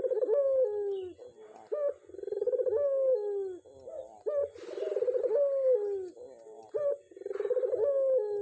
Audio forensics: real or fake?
real